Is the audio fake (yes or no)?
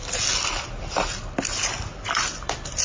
no